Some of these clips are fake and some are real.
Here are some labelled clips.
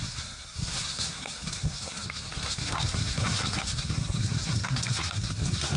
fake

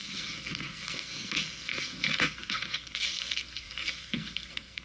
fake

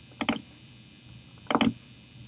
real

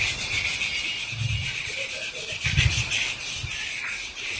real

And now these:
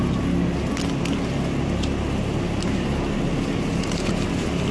real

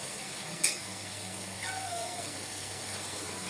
fake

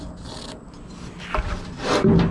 real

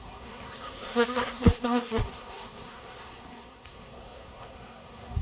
fake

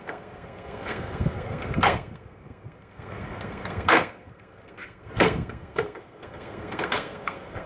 fake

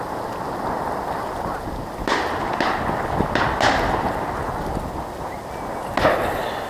real